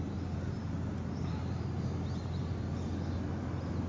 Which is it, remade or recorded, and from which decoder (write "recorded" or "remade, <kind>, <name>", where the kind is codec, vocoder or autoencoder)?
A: recorded